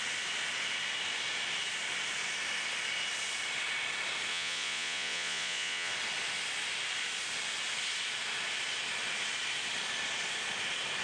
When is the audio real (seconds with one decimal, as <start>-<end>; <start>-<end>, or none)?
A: 0.0-4.3; 5.9-11.0